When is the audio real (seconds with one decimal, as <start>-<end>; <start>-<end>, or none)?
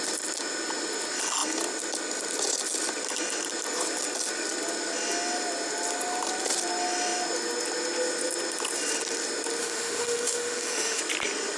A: 0.0-9.6; 11.0-11.6